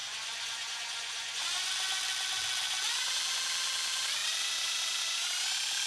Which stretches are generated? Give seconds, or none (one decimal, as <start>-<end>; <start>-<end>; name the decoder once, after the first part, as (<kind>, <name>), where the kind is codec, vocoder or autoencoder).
0.0-1.7 (vocoder, Vocos)